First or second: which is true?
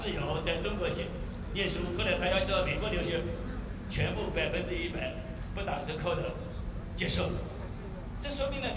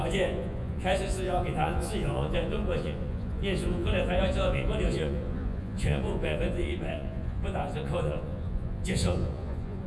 first